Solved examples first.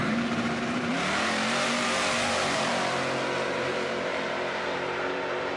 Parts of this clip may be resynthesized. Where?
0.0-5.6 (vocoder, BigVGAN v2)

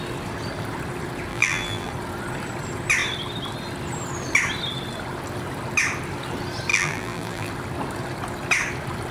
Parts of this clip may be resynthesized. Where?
1.3-1.9 (vocoder, BigVGAN v2); 6.7-7.5